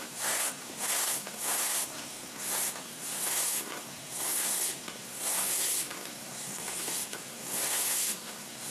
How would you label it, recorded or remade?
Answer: remade